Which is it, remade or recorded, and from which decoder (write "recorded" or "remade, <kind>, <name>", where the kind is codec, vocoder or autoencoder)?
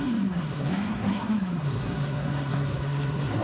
remade, codec, SNAC